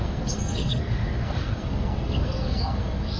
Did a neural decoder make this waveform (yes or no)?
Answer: yes